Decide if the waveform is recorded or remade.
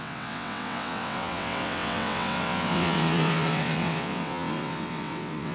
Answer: remade